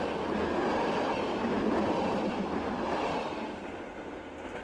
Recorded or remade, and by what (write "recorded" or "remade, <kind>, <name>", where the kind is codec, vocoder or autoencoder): recorded